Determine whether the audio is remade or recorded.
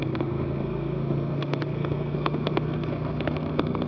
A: remade